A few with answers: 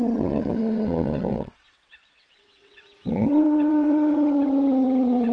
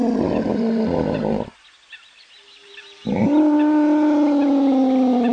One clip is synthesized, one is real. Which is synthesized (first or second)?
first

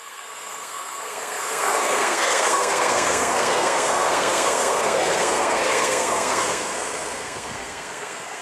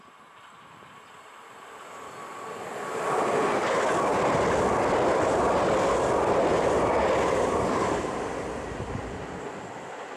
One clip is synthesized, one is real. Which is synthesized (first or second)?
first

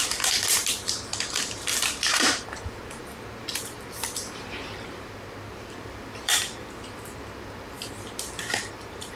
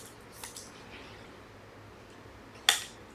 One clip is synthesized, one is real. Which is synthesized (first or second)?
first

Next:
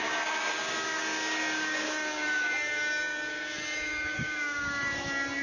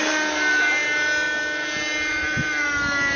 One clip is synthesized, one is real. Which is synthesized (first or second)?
first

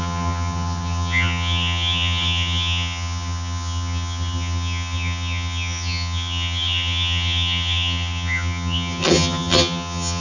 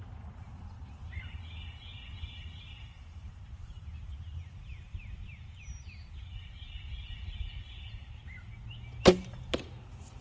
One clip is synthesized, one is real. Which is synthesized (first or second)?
first